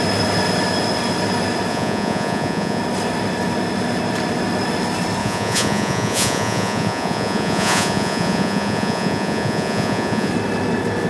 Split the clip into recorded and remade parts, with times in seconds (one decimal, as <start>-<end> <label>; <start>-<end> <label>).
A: 0.0-1.7 recorded; 1.7-2.8 remade; 2.8-5.2 recorded; 5.2-10.3 remade; 10.3-11.1 recorded